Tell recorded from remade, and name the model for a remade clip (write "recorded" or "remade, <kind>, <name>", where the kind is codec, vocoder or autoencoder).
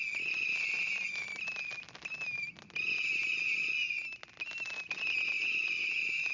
recorded